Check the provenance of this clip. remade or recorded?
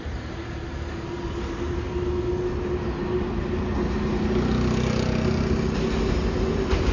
recorded